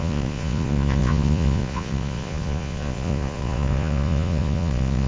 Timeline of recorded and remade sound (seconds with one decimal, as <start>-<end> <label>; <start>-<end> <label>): 0.0-5.1 remade